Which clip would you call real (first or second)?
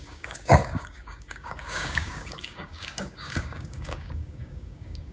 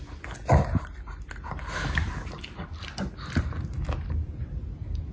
second